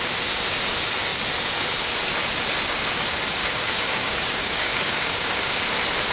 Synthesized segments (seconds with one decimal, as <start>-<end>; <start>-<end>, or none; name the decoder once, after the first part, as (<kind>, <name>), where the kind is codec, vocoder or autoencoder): 3.4-5.6 (codec, DAC)